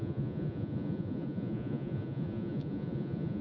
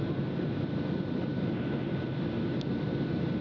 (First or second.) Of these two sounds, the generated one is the first